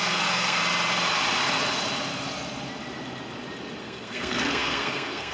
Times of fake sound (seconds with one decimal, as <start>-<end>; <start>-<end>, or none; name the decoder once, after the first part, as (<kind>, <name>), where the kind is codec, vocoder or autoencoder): 0.0-0.6 (codec, SNAC); 3.8-5.3